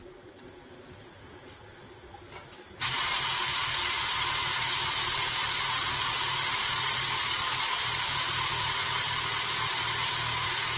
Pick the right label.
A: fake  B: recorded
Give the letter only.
B